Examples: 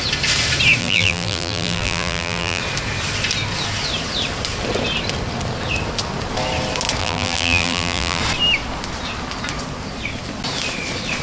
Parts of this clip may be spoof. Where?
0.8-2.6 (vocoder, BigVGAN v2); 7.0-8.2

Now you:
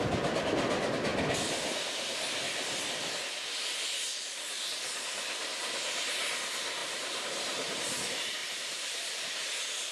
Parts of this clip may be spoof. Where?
6.8-8.0 (vocoder, BigVGAN v2); 8.4-9.2

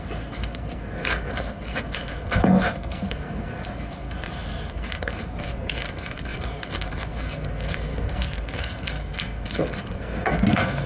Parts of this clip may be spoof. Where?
0.0-10.9 (codec, SNAC)

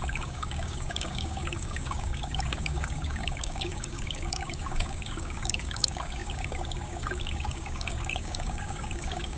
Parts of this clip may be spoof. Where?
0.0-9.4 (codec, DAC)

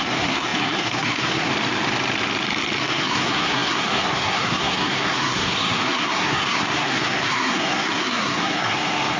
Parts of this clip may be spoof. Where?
0.0-1.5 (codec, SNAC); 2.8-9.2

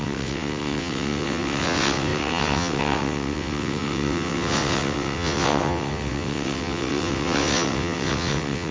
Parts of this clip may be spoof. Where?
0.0-8.7 (vocoder, WaveNeXt)

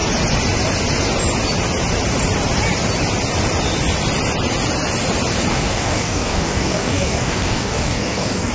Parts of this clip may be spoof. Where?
5.5-8.5 (codec, DAC)

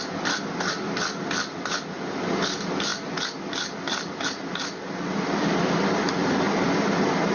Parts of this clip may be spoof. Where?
none